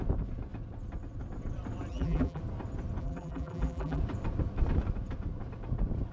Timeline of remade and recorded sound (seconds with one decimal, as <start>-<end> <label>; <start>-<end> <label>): 0.0-1.9 recorded; 1.9-2.4 remade; 2.4-3.0 recorded; 3.0-4.0 remade; 4.0-6.1 recorded